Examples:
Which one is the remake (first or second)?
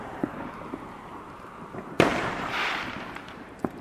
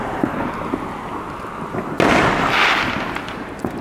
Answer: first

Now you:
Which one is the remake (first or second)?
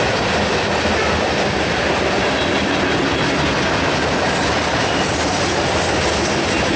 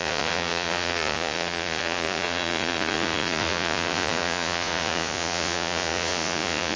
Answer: second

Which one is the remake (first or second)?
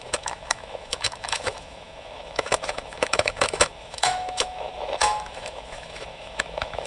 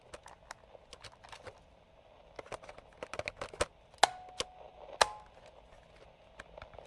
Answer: first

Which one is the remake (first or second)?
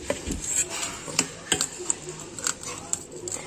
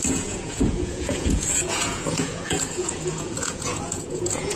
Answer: second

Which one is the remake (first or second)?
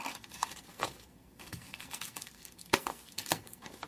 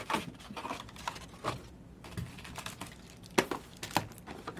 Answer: first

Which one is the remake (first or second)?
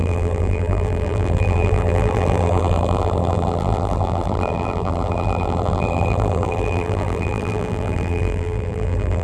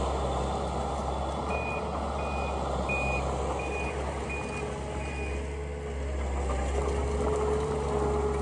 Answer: first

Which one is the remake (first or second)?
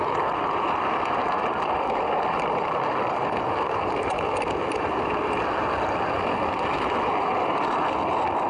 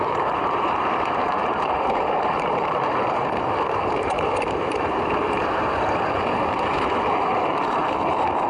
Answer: second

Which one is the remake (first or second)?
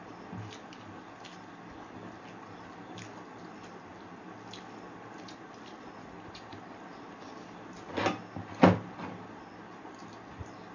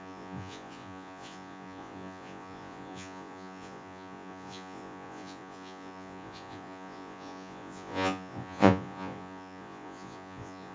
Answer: second